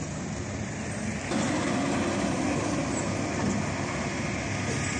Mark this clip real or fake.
real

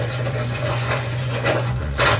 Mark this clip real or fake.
fake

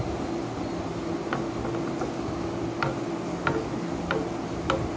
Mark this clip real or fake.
real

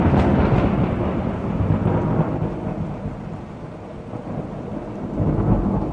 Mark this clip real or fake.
real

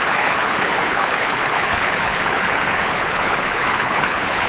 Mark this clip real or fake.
fake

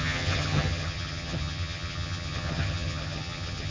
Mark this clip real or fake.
fake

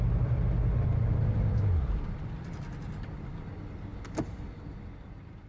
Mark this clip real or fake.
real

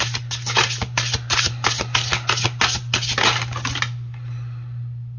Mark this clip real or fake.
real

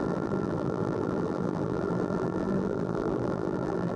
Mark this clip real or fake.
fake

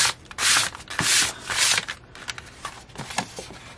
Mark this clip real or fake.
real